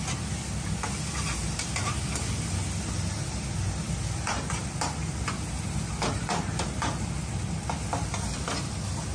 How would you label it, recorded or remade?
recorded